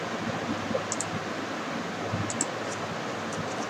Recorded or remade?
recorded